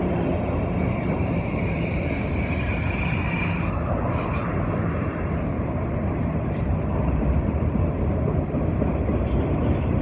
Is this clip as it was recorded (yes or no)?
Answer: no